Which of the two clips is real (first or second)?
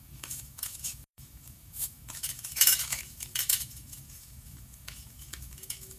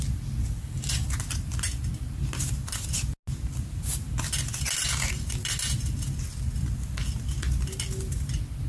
second